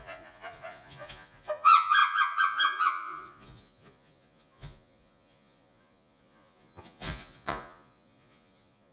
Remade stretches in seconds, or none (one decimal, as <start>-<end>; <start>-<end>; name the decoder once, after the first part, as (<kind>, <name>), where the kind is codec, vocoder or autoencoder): 0.0-8.9 (vocoder, Vocos)